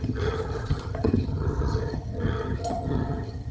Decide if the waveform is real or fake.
fake